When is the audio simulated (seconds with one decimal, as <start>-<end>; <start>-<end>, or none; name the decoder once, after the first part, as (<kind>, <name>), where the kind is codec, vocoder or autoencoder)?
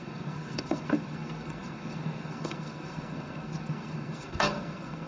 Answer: 0.0-5.1 (codec, SNAC)